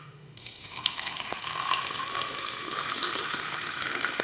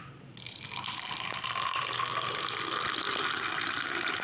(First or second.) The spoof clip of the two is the first